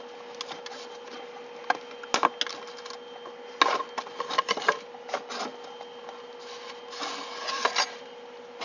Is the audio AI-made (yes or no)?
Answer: no